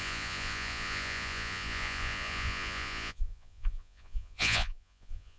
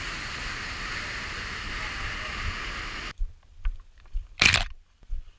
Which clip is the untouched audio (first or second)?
second